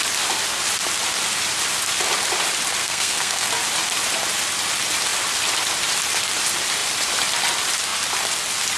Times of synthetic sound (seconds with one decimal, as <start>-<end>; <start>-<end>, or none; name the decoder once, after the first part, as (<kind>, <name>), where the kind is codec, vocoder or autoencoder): 2.8-3.5 (codec, SNAC)